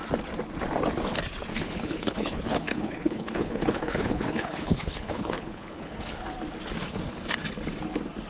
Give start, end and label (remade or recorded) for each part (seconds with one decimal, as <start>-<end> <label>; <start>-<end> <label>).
0.0-1.5 recorded; 1.5-6.2 remade; 6.2-8.3 recorded